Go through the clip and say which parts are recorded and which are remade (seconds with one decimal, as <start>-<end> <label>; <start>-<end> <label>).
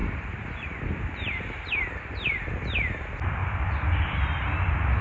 0.0-1.7 remade; 1.7-3.4 recorded; 3.4-5.0 remade